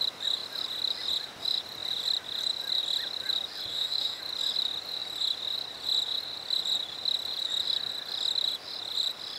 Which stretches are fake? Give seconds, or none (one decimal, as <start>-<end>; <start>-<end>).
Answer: 3.7-4.2